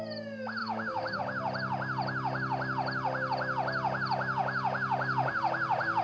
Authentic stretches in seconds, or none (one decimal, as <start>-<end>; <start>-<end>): 0.0-0.6; 1.2-6.0